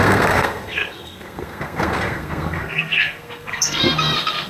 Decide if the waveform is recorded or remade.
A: remade